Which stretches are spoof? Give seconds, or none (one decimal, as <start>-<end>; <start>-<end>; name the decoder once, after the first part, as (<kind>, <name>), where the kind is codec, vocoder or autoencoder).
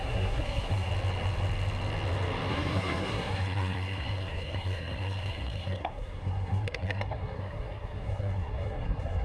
0.0-0.9 (codec, SNAC); 2.5-9.2